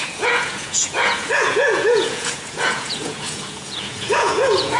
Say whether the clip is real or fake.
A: fake